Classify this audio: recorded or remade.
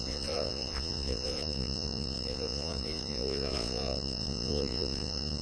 remade